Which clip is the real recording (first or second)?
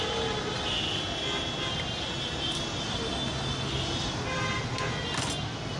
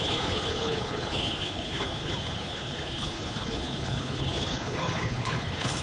first